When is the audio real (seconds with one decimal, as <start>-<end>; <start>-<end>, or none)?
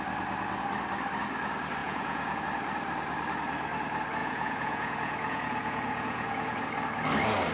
0.0-1.8; 2.4-4.2; 6.6-7.5